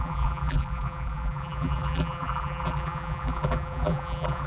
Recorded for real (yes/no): no